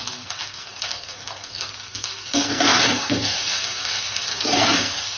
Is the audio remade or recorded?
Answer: remade